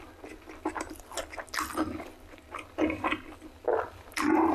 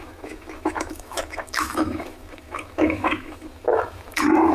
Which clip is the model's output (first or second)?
second